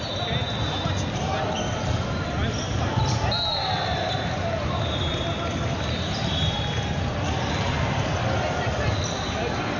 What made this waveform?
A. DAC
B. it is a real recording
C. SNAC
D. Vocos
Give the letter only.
B